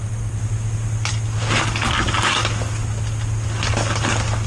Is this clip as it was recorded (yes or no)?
yes